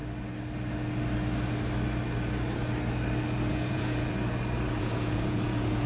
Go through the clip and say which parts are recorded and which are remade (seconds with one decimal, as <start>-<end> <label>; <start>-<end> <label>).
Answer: 0.0-3.5 recorded; 3.5-4.1 remade; 4.1-4.7 recorded; 4.7-5.9 remade